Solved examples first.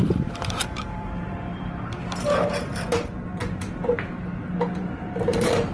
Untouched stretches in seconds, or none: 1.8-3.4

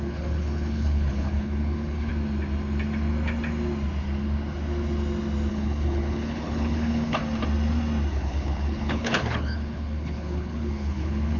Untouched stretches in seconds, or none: 2.1-5.5; 7.2-8.1